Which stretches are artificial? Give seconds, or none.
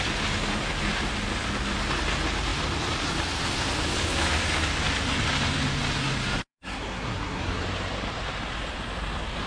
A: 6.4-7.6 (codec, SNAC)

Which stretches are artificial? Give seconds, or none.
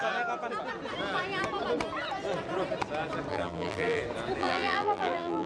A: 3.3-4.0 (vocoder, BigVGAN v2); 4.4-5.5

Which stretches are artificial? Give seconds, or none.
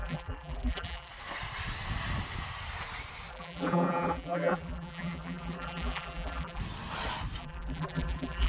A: 0.0-1.1 (vocoder, BigVGAN v2); 3.3-6.6; 7.4-8.5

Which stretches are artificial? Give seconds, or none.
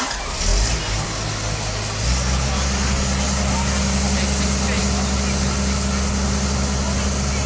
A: none